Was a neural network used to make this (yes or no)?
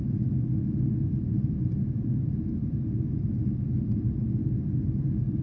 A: no